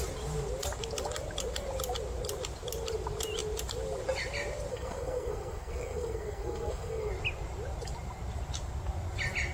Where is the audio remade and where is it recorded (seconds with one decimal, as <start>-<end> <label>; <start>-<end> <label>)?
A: 0.0-4.7 recorded; 4.7-7.1 remade; 7.1-9.5 recorded

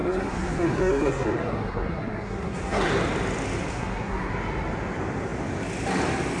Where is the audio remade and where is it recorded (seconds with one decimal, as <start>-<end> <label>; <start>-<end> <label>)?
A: 0.0-2.9 remade; 2.9-3.7 recorded; 3.7-4.3 remade; 4.3-6.4 recorded

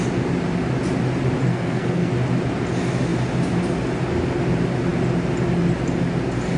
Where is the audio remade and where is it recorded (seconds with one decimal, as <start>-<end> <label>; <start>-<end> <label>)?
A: 0.0-1.5 recorded; 1.5-2.1 remade; 2.1-6.6 recorded

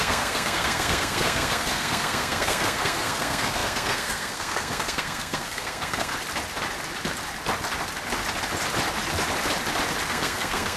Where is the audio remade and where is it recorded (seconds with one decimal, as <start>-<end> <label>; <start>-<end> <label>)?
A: 0.0-6.1 remade; 6.1-10.1 recorded; 10.1-10.8 remade